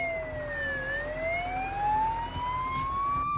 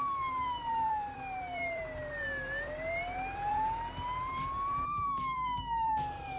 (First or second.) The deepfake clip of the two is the second